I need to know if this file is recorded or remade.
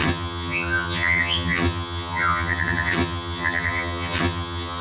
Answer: remade